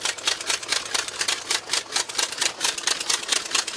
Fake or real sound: fake